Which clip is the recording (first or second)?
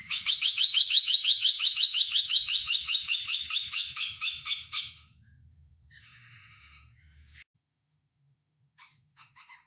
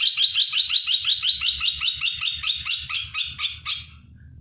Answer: second